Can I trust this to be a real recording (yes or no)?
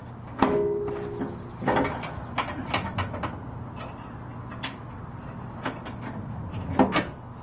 yes